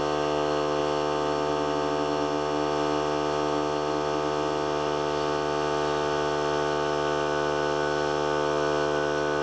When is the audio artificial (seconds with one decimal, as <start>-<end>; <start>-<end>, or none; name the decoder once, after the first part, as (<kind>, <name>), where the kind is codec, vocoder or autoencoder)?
none